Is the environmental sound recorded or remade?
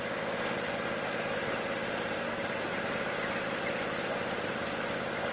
recorded